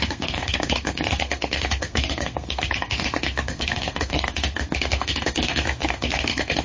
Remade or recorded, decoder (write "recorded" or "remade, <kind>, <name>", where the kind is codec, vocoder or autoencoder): remade, codec, SNAC